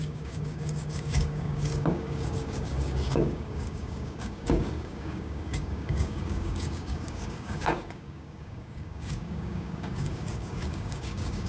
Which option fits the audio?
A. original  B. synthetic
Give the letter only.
B